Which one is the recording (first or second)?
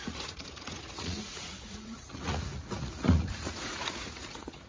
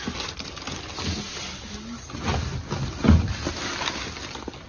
second